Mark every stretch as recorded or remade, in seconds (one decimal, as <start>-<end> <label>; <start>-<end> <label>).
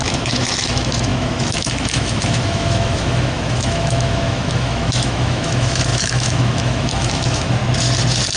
0.0-7.6 remade; 7.6-8.4 recorded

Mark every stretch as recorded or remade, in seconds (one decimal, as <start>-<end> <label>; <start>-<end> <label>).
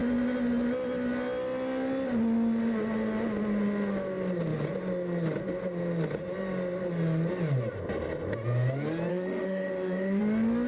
0.0-9.1 recorded; 9.1-10.2 remade; 10.2-10.7 recorded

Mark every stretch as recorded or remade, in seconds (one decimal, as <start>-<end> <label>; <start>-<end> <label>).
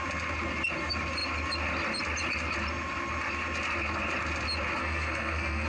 0.0-4.8 recorded; 4.8-5.7 remade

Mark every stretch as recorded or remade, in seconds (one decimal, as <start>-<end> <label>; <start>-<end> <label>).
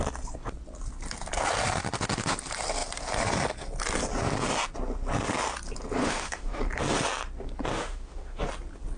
0.0-6.0 recorded; 6.0-6.6 remade; 6.6-7.7 recorded; 7.7-8.4 remade; 8.4-9.0 recorded